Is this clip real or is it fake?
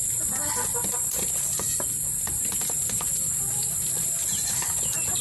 real